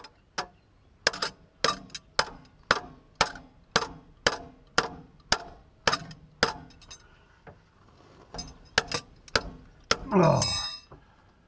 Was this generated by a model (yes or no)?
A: no